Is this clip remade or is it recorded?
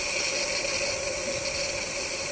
recorded